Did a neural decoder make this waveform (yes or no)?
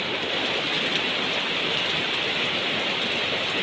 no